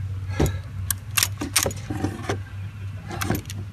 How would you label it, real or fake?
real